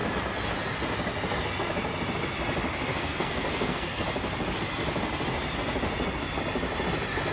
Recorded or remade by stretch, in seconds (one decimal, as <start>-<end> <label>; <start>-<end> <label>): 0.0-2.9 recorded; 2.9-4.1 remade; 4.1-7.3 recorded